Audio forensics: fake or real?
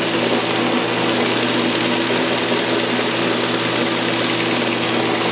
real